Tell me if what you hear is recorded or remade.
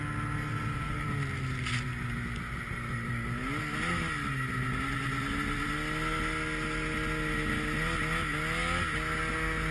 recorded